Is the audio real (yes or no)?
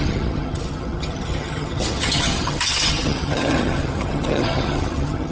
no